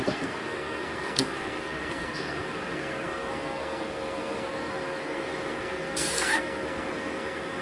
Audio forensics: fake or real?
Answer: fake